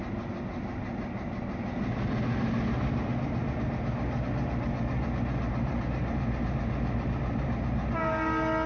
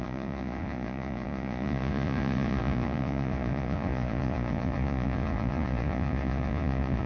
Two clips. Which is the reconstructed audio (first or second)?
second